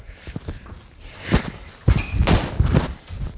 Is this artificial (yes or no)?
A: no